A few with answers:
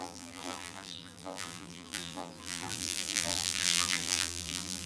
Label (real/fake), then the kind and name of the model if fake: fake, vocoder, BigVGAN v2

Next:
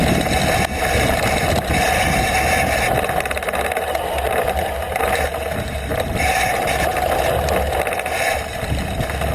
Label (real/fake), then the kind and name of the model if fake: real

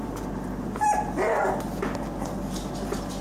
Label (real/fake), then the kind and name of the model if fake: real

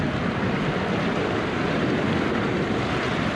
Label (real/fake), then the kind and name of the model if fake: real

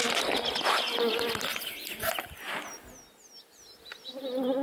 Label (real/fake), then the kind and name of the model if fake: real